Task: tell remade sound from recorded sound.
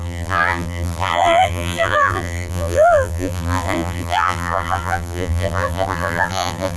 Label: remade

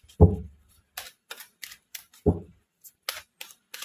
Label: recorded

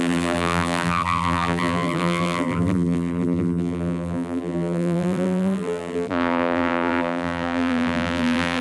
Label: remade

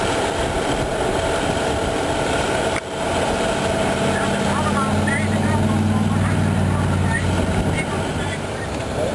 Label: remade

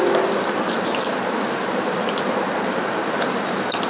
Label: remade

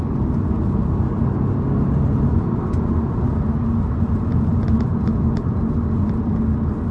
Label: recorded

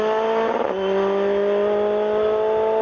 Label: recorded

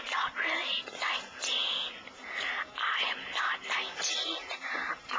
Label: recorded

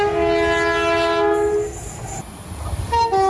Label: recorded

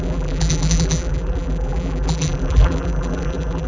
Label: remade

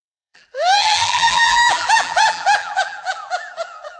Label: remade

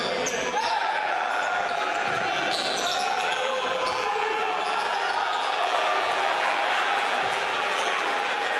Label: remade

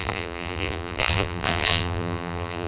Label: remade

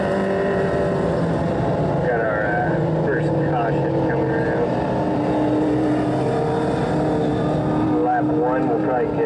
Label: recorded